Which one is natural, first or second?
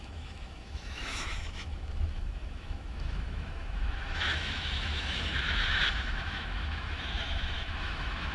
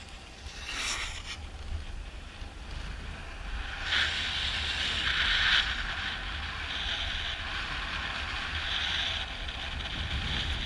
second